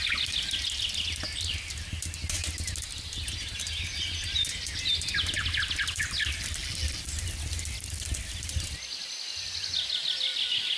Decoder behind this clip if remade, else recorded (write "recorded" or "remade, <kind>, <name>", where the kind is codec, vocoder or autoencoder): recorded